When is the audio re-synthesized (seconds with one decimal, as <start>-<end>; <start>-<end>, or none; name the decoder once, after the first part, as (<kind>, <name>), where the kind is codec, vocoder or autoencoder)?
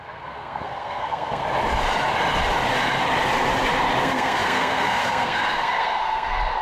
0.0-1.4 (codec, SNAC); 4.0-6.6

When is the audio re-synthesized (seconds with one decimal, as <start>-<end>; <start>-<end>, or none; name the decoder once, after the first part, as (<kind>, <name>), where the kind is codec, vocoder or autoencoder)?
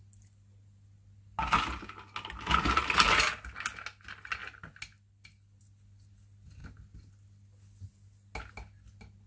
none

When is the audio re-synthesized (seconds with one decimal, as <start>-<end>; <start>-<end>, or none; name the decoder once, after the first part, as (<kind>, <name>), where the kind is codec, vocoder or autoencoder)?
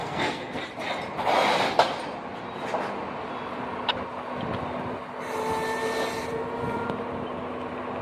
0.0-0.6 (codec, SNAC)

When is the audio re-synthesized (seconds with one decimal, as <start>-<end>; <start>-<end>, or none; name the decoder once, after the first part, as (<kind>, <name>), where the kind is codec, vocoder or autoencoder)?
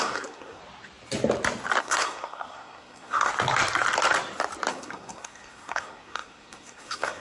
0.0-0.6 (codec, SNAC); 1.8-3.3; 4.7-7.2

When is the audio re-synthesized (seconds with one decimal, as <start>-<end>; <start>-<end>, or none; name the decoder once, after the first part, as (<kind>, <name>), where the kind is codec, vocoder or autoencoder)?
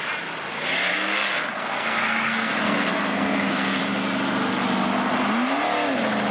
0.9-3.8 (codec, SNAC)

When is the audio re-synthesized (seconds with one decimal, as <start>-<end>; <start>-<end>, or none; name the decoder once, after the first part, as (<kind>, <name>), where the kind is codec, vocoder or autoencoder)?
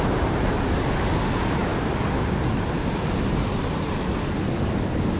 none